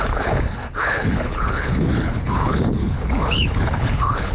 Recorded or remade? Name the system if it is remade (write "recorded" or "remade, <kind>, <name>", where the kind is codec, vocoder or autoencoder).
remade, codec, HILCodec